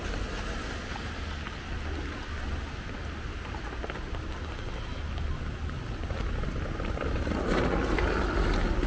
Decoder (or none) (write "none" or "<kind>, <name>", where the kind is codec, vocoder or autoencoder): none